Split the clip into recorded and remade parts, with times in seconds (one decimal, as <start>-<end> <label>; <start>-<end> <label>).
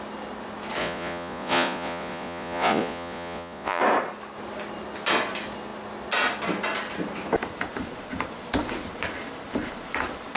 0.0-0.8 recorded; 0.8-3.8 remade; 3.8-10.4 recorded